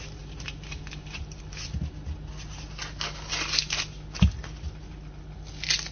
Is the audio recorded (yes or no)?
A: yes